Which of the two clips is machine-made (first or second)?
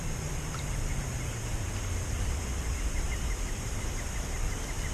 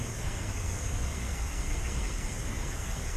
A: second